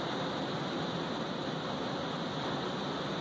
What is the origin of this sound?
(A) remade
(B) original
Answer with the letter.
B